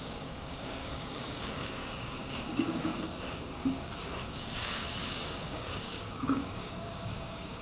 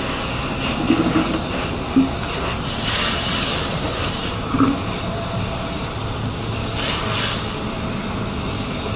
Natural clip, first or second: second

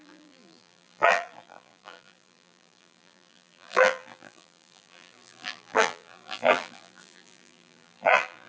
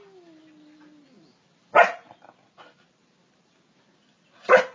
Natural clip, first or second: second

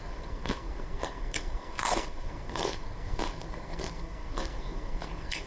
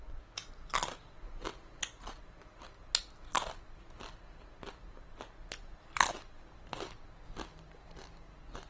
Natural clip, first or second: second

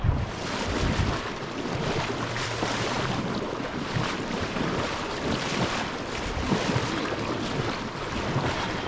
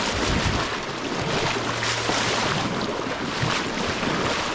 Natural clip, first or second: second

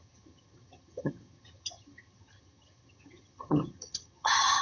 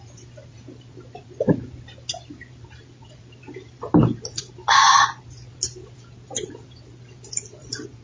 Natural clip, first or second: second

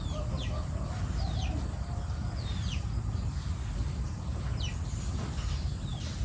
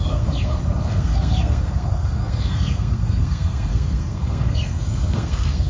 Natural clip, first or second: first